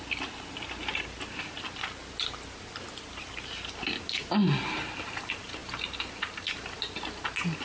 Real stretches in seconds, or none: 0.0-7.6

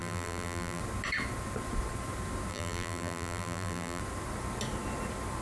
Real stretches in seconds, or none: 0.8-2.5; 4.0-5.4

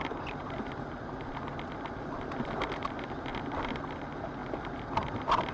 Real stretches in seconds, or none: 0.0-0.4; 2.7-3.3; 3.8-5.5

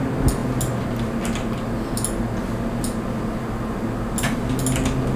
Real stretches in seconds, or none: 0.0-5.2

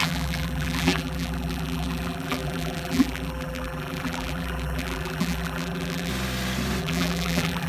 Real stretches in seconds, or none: 6.1-6.8

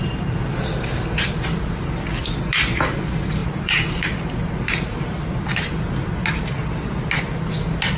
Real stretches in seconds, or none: 0.0-3.4; 5.2-8.0

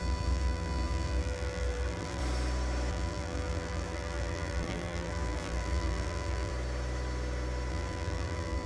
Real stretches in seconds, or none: 2.2-2.9; 6.5-7.7

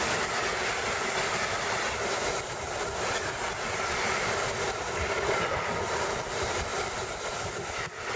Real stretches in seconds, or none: 0.0-6.7